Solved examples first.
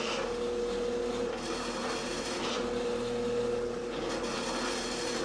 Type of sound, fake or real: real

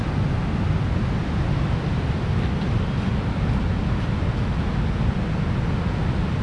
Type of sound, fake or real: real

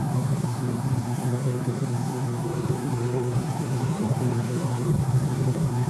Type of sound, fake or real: fake